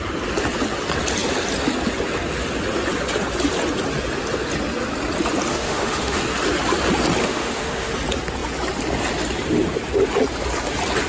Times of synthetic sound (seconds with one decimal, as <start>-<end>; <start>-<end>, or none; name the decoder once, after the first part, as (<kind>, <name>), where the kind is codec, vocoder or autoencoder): 5.5-6.2 (autoencoder, DAC-VAE); 7.2-7.9